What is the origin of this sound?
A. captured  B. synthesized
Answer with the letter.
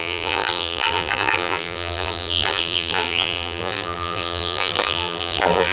B